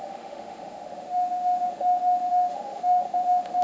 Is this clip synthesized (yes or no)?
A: yes